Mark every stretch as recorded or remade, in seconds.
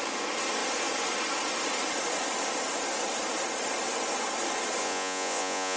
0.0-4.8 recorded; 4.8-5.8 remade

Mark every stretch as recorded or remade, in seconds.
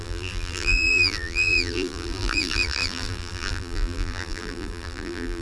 0.0-5.4 remade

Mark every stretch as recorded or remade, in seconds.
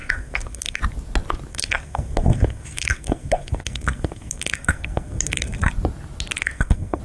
0.0-0.8 remade; 0.8-1.5 recorded; 1.5-5.7 remade; 5.7-6.4 recorded; 6.4-7.0 remade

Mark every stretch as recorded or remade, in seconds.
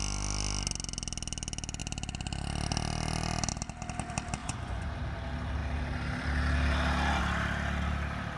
0.0-4.4 recorded; 4.4-5.0 remade; 5.0-8.4 recorded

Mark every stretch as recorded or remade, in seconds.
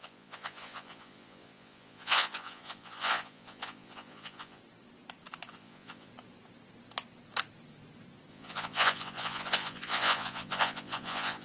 0.0-4.6 remade; 4.6-5.5 recorded; 5.5-6.1 remade; 6.1-8.3 recorded; 8.3-11.4 remade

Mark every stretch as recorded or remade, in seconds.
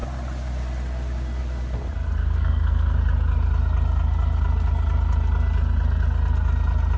0.0-2.2 recorded; 2.2-3.0 remade; 3.0-7.0 recorded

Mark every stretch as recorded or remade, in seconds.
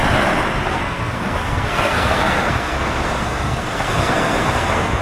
0.0-0.7 recorded; 0.7-5.0 remade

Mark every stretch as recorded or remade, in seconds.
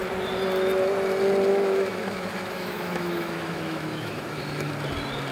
0.0-1.5 recorded; 1.5-4.7 remade; 4.7-5.3 recorded